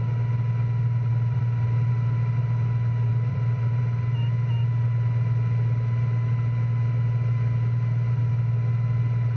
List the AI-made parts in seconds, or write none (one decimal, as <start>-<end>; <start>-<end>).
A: 1.1-1.9; 3.1-3.8